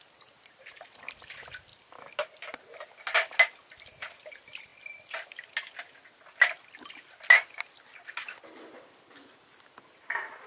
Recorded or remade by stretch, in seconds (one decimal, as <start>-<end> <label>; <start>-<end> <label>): 0.0-10.5 recorded